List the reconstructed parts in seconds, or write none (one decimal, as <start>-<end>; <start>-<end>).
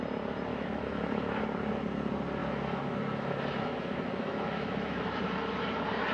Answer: 0.5-1.4; 2.4-5.2